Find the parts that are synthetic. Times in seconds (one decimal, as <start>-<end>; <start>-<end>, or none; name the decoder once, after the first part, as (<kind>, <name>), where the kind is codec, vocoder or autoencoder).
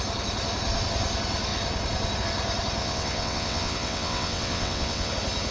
2.8-5.1 (vocoder, WaveNeXt)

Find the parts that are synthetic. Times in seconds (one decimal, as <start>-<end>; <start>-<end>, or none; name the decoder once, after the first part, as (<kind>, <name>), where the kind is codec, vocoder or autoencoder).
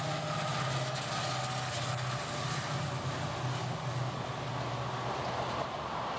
none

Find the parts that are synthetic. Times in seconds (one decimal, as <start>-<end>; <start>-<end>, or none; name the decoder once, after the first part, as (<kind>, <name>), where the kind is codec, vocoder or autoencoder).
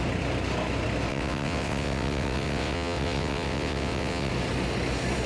1.1-4.3 (vocoder, WaveNeXt)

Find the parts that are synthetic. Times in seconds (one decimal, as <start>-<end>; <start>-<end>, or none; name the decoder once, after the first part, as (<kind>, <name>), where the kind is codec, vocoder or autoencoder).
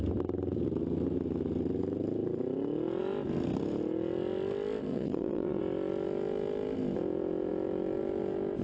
4.9-5.6 (vocoder, WaveNeXt)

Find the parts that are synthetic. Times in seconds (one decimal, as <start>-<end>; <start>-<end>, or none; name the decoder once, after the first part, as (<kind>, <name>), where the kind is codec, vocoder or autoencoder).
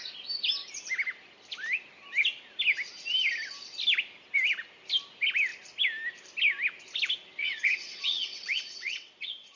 7.4-9.6 (vocoder, WaveNeXt)